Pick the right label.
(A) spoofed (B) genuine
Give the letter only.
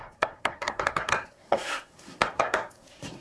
A